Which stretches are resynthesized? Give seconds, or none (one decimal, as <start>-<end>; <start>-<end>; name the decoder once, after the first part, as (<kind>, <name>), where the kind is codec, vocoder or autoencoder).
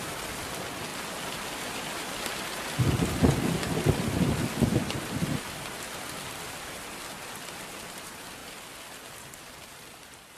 0.0-0.9 (vocoder, BigVGAN v2); 1.9-8.4; 9.1-10.4